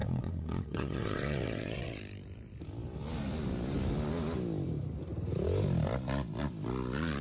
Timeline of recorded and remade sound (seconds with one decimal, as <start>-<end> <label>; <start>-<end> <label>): 0.0-2.0 remade; 2.0-7.2 recorded